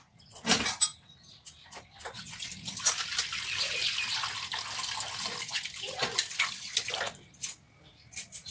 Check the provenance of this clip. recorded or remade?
recorded